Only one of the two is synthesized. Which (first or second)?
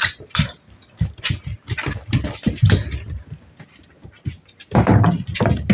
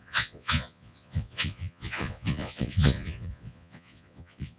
second